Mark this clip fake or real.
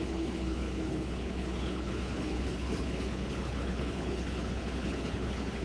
fake